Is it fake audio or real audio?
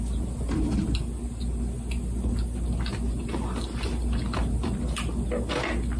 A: real